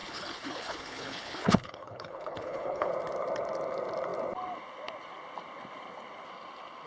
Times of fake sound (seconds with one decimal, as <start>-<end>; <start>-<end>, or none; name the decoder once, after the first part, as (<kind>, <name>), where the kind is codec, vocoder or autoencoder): 0.0-2.9 (codec, HILCodec)